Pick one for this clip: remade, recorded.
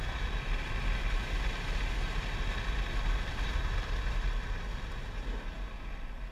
recorded